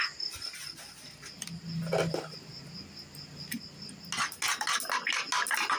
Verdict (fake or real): real